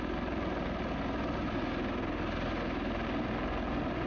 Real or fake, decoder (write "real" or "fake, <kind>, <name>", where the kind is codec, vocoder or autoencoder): real